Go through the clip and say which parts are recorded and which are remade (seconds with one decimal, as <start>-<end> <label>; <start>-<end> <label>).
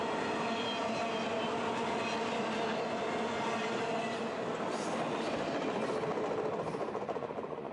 0.0-6.7 recorded; 6.7-7.7 remade